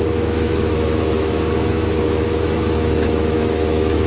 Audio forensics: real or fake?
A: fake